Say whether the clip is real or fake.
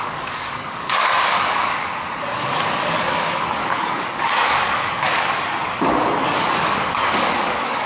fake